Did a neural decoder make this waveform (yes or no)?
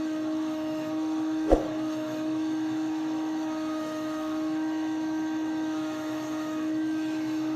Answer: yes